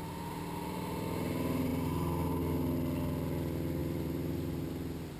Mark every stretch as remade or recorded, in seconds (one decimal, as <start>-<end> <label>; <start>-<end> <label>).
0.0-3.8 recorded; 3.8-4.7 remade; 4.7-5.2 recorded